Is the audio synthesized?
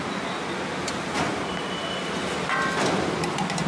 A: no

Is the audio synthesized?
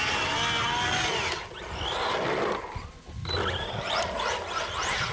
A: no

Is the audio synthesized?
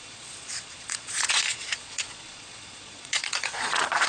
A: yes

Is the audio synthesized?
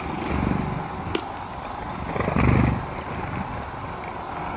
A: no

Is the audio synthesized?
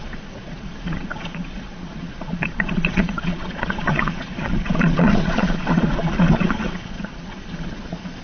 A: yes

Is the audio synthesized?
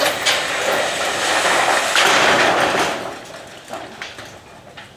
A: no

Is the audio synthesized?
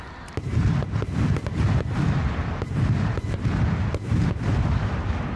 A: no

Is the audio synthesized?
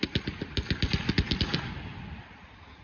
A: no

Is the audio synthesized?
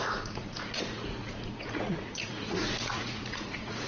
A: yes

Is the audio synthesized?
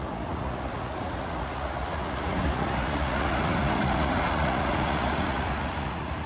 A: yes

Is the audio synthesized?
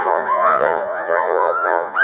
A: yes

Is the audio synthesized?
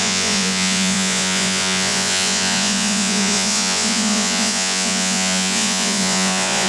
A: yes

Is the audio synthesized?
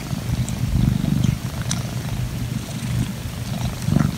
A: no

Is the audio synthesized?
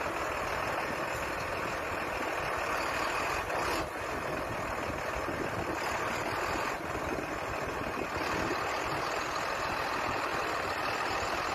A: no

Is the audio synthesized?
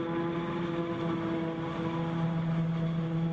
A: no